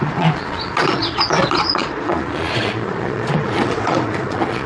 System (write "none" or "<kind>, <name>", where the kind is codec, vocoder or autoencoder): vocoder, Vocos